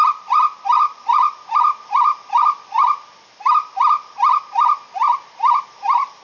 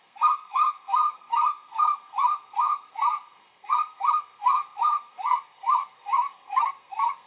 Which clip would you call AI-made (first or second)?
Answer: second